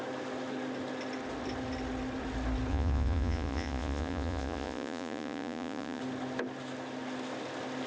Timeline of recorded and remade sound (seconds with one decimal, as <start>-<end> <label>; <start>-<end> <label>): 0.0-2.7 recorded; 2.7-6.0 remade; 6.0-7.9 recorded